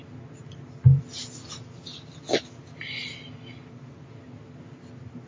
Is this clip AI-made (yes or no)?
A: no